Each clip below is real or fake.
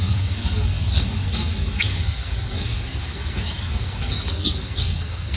fake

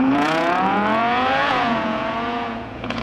fake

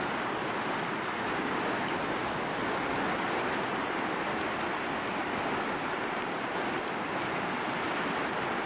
real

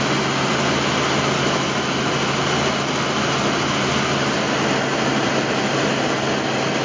real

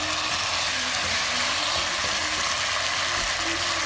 real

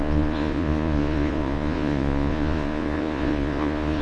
fake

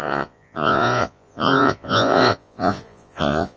fake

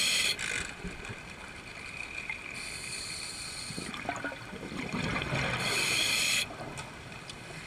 fake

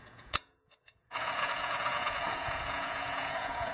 fake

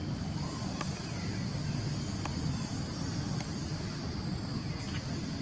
real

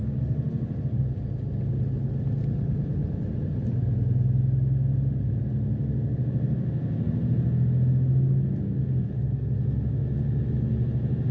real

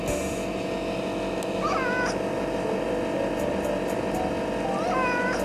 real